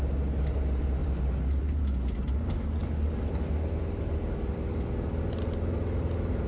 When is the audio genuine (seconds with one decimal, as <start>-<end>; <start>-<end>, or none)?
0.0-1.0; 1.6-6.5